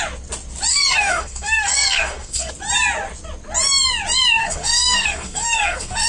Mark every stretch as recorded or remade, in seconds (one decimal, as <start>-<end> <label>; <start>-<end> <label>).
0.0-0.7 recorded; 0.7-2.5 remade; 2.5-4.4 recorded; 4.4-6.1 remade